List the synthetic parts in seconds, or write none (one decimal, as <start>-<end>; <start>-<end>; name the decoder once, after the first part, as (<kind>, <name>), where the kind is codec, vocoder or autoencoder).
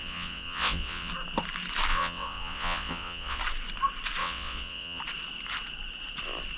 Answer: 0.0-1.1 (vocoder, WaveNeXt); 1.9-3.4; 4.2-5.0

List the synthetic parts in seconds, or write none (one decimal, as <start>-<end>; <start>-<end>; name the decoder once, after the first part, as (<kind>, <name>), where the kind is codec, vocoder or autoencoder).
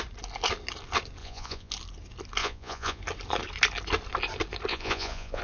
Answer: 1.2-1.7 (vocoder, Vocos); 2.4-3.0; 4.7-5.4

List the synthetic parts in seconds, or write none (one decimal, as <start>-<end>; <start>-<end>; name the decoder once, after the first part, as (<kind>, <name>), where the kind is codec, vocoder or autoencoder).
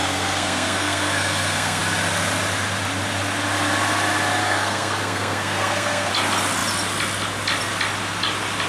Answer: 0.0-1.8 (codec, SNAC); 4.4-6.1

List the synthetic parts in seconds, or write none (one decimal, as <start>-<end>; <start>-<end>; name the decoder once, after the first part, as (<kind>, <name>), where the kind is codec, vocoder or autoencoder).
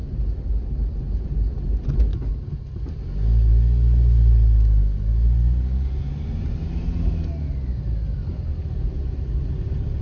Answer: 8.5-9.5 (vocoder, BigVGAN v2)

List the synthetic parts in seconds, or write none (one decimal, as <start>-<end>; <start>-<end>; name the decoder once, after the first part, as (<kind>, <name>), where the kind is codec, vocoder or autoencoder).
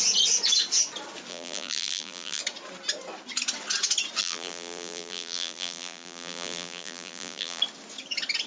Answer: 1.3-2.4 (vocoder, BigVGAN v2); 4.2-7.6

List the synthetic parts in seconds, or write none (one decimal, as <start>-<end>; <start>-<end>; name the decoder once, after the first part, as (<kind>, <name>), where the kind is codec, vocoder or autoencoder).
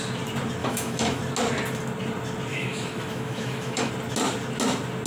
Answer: 0.6-1.2 (autoencoder, DAC-VAE); 2.5-3.9